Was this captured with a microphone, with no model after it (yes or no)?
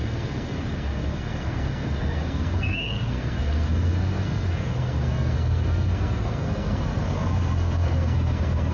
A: no